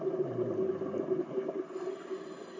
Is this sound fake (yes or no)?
no